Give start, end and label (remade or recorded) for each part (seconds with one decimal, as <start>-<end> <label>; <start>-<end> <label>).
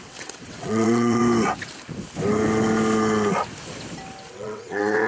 0.0-1.2 remade; 1.2-4.3 recorded; 4.3-5.1 remade